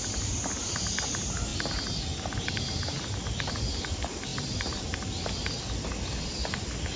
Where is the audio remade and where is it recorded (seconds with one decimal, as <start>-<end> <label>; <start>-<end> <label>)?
0.0-7.0 recorded